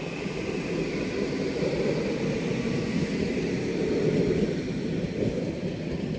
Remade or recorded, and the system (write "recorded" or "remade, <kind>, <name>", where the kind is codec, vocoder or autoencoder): recorded